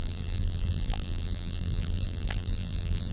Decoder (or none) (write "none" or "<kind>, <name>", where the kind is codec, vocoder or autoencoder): vocoder, BigVGAN v2